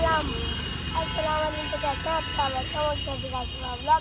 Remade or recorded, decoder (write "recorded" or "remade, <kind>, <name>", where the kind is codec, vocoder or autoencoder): recorded